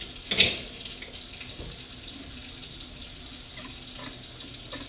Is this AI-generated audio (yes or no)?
no